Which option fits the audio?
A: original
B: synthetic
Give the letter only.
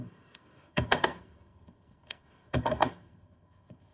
B